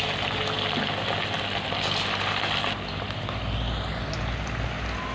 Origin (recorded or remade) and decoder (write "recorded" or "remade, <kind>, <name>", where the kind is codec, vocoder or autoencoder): recorded